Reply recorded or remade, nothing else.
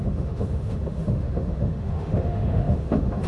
remade